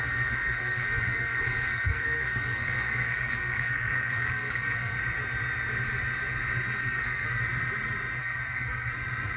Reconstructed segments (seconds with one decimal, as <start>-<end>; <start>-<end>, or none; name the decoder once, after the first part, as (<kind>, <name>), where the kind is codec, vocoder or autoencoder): 0.0-5.0 (codec, SNAC); 6.8-7.4; 8.2-8.9